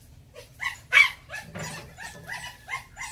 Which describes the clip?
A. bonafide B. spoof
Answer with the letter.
A